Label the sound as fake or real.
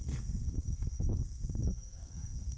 fake